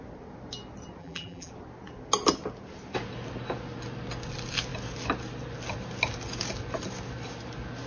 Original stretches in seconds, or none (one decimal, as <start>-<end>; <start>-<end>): 0.0-1.0; 1.5-7.9